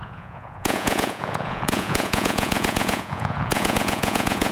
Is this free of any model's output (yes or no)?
no